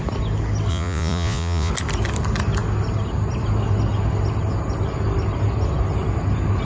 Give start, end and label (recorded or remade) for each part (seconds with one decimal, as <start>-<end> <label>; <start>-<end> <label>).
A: 0.0-0.7 recorded; 0.7-1.7 remade; 1.7-6.6 recorded